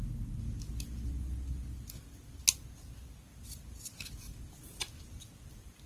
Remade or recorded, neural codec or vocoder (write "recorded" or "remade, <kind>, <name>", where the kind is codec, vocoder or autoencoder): recorded